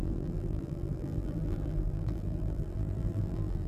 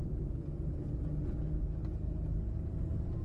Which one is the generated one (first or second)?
first